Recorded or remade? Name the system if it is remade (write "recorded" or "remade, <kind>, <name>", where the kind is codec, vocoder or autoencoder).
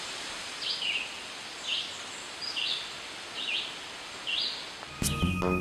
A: recorded